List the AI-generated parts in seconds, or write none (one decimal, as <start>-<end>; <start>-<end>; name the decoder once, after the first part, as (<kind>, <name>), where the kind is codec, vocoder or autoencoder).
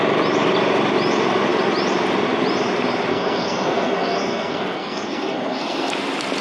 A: 3.1-5.9 (codec, SNAC)